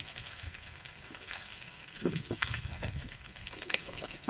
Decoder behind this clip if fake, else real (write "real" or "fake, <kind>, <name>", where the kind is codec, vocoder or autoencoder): fake, codec, SNAC